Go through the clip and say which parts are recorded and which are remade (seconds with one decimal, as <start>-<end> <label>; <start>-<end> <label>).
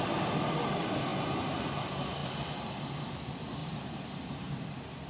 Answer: 0.0-3.6 recorded; 3.6-4.4 remade; 4.4-5.1 recorded